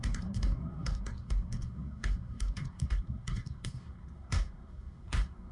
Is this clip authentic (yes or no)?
no